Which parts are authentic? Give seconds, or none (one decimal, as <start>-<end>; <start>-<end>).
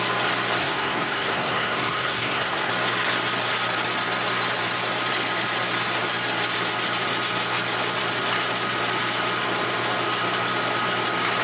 0.0-0.6; 2.7-11.4